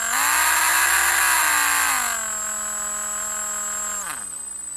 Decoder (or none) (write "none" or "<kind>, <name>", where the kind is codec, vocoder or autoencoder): none